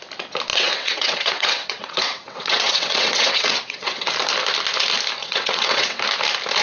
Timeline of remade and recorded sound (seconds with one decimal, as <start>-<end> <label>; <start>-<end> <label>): 0.0-0.5 recorded; 0.5-4.1 remade; 4.1-5.2 recorded; 5.2-6.0 remade; 6.0-6.6 recorded